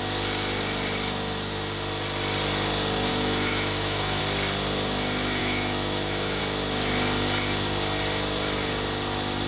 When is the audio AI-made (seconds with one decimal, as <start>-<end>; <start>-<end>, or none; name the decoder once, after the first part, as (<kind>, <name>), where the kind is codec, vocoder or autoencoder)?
3.1-4.2 (autoencoder, DAC-VAE); 5.4-6.4